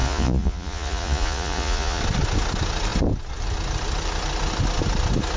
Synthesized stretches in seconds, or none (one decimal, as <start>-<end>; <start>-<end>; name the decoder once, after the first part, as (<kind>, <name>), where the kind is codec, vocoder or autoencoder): 0.0-2.0 (vocoder, Vocos)